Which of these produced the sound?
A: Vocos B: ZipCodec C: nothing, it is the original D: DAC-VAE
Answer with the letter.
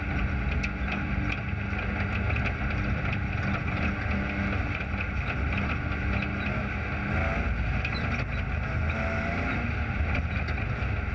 C